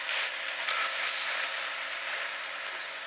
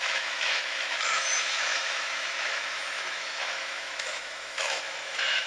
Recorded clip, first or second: first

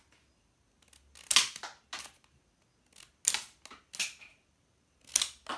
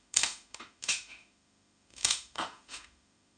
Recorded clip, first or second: first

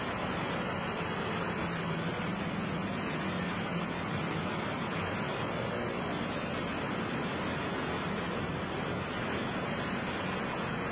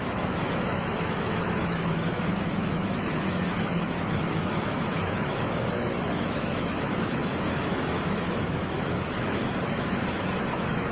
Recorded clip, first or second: first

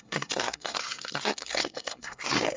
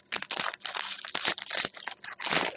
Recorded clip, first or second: second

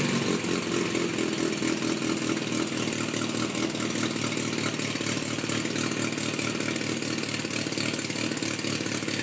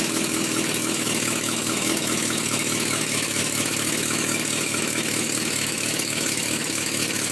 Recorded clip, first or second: first